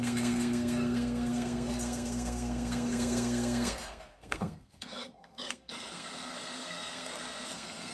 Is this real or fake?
fake